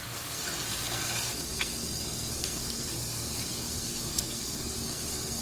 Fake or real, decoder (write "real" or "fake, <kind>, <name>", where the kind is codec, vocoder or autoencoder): fake, codec, SNAC